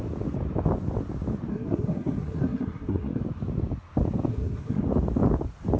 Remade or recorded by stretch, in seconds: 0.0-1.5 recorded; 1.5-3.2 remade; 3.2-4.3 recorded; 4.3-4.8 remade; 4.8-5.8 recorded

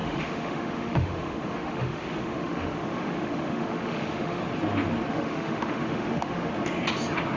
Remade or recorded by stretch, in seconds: 0.0-4.4 remade; 4.4-5.1 recorded; 5.1-6.5 remade; 6.5-7.4 recorded

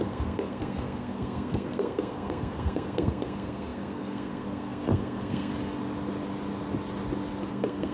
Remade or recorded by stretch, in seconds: 0.0-5.5 remade; 5.5-7.5 recorded; 7.5-7.9 remade

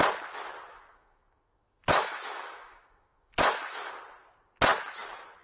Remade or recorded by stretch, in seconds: 0.0-0.7 recorded; 0.7-3.9 remade; 3.9-5.4 recorded

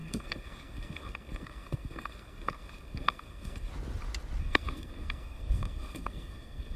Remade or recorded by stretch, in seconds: 0.0-3.7 remade; 3.7-4.4 recorded; 4.4-6.8 remade

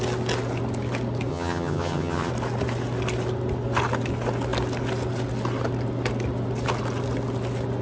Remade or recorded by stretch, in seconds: 0.0-1.3 recorded; 1.3-2.3 remade; 2.3-7.8 recorded

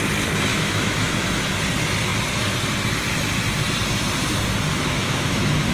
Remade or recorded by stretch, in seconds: 0.0-0.5 recorded; 0.5-1.1 remade; 1.1-4.7 recorded; 4.7-5.7 remade

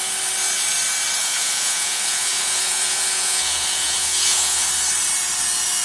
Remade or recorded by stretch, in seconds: 0.0-1.2 recorded; 1.2-4.7 remade; 4.7-5.8 recorded